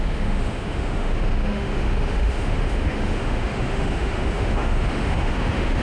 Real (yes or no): no